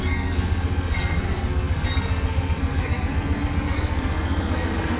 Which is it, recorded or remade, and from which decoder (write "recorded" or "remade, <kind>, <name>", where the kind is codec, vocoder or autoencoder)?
remade, codec, SNAC